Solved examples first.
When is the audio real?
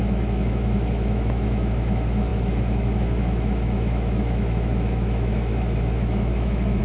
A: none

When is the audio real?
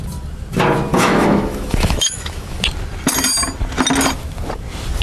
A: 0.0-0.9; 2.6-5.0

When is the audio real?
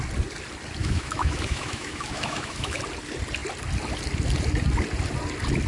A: 0.0-0.8; 2.8-5.7